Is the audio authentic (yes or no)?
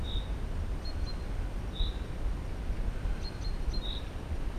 yes